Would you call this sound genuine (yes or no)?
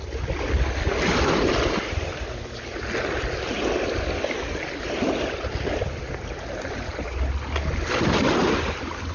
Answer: yes